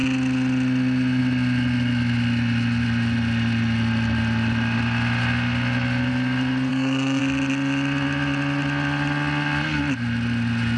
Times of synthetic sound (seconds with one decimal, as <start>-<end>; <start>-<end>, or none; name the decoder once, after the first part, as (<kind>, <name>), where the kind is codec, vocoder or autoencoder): 6.7-7.2 (codec, SNAC)